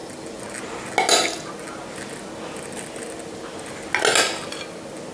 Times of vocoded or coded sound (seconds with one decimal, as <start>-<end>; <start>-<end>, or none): none